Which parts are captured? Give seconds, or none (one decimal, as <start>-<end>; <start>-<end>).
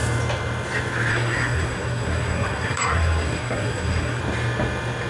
0.0-1.1; 4.2-5.1